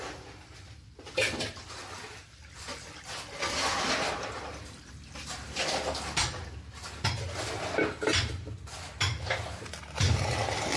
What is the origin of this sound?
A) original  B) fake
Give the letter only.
A